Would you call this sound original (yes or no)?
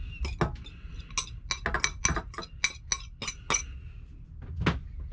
yes